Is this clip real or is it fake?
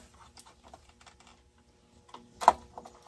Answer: real